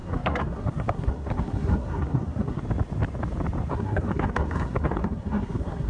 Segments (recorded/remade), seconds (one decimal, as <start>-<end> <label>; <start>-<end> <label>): 0.0-2.6 remade; 2.6-3.7 recorded; 3.7-5.9 remade